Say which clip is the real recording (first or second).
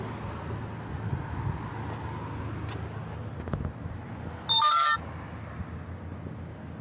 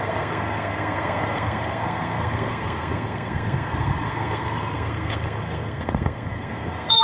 first